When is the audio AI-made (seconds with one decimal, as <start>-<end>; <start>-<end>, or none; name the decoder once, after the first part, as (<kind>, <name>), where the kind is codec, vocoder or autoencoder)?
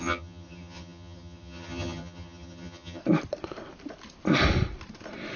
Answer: 0.0-3.0 (vocoder, HiFi-GAN)